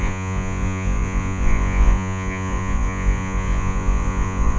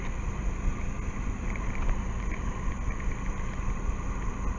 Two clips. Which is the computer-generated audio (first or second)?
first